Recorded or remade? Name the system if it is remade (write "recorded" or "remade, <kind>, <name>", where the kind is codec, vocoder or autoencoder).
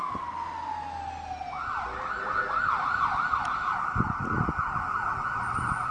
recorded